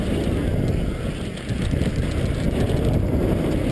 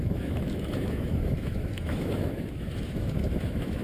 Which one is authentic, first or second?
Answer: first